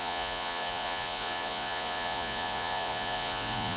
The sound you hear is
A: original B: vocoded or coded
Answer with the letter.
B